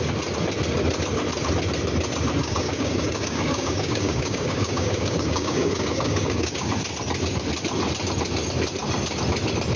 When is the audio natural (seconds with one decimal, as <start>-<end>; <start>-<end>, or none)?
0.0-2.4; 6.7-9.8